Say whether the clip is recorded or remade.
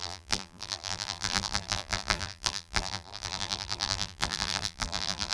remade